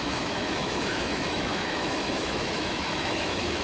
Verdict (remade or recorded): remade